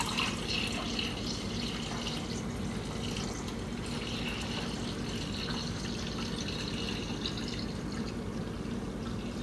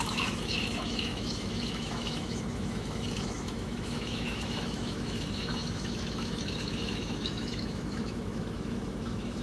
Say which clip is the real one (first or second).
first